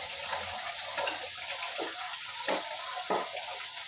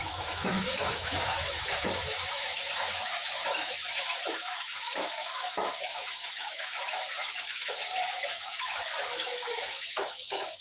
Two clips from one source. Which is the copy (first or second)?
second